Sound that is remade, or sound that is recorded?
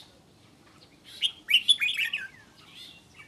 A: recorded